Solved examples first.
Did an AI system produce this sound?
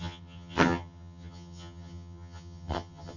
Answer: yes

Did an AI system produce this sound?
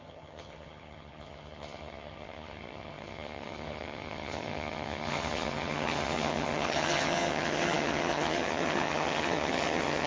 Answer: yes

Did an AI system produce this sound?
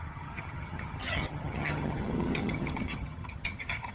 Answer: yes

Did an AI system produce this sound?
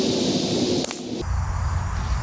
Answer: no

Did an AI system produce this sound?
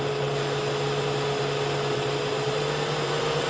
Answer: no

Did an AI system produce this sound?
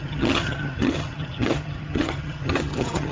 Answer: yes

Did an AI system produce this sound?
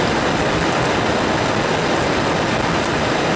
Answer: no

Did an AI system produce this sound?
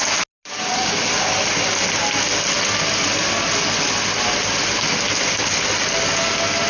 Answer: no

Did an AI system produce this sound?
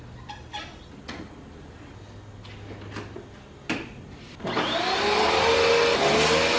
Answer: no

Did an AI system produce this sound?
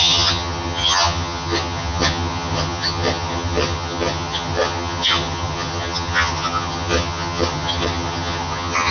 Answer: yes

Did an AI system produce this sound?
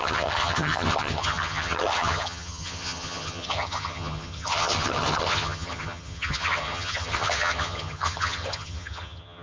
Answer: yes